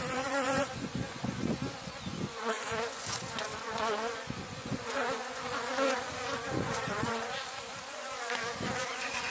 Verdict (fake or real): fake